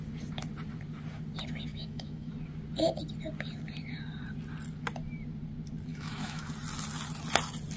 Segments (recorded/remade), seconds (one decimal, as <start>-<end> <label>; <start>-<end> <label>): 0.0-1.7 recorded; 1.7-2.3 remade; 2.3-5.9 recorded; 5.9-6.5 remade; 6.5-7.8 recorded